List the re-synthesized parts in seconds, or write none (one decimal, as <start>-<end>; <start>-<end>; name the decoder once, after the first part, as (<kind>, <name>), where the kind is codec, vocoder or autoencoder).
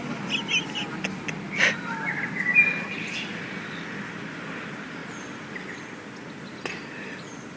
none